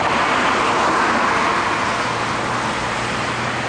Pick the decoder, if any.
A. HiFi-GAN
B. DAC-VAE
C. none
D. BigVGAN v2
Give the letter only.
C